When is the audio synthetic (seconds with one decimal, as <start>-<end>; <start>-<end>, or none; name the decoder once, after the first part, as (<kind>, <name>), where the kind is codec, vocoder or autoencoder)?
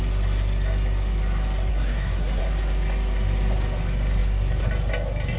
1.7-2.4 (codec, SNAC)